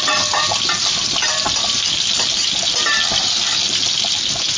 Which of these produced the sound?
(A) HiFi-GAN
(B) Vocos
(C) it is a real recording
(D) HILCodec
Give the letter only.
C